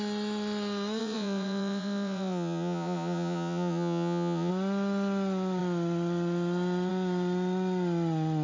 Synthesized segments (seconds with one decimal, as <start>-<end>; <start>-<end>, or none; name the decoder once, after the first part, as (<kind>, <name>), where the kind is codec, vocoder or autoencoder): 1.0-4.5 (vocoder, Vocos)